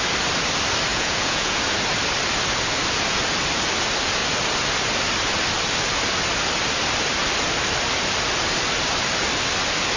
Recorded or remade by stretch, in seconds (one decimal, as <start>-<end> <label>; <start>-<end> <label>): 0.0-0.9 recorded; 0.9-1.6 remade; 1.6-10.0 recorded